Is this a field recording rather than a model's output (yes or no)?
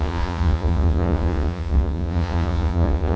no